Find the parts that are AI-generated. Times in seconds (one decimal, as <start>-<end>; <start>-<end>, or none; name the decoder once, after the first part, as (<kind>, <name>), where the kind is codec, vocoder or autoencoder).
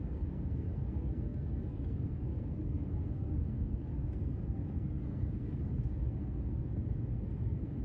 0.0-7.8 (codec, SNAC)